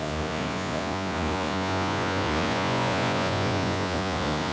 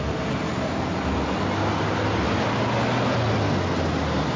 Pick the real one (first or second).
second